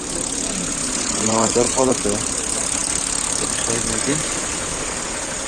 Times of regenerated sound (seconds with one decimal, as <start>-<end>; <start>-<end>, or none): 0.8-1.9